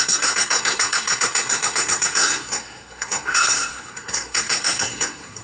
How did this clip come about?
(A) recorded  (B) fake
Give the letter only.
B